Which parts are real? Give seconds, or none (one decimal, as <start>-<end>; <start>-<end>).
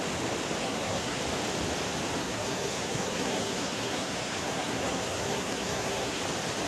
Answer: 0.0-0.6; 1.2-2.2; 6.2-6.7